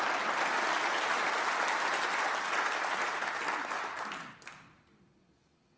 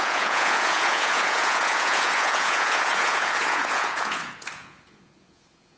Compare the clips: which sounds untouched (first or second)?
first